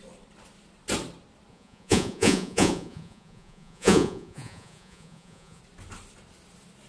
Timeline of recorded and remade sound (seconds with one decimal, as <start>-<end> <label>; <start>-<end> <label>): 0.0-1.5 recorded; 1.5-5.6 remade; 5.6-6.9 recorded